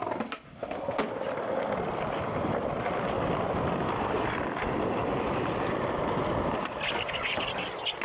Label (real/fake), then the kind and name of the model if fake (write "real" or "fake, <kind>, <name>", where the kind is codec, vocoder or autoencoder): real